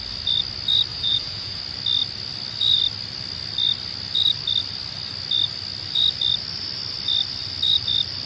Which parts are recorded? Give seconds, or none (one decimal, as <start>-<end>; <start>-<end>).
0.0-0.9; 1.6-8.3